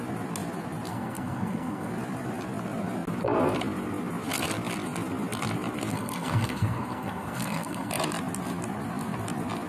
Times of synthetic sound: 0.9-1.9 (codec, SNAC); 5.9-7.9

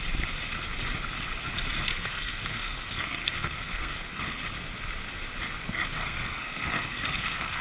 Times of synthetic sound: 1.9-4.4 (codec, SNAC); 6.0-7.6

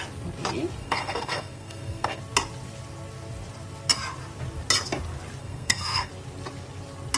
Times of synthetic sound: 0.8-2.2 (codec, SNAC); 5.4-6.1